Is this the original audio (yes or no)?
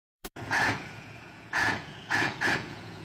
no